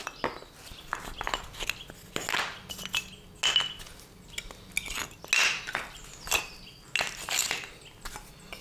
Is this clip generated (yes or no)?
no